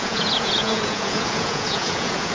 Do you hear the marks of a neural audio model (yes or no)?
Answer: yes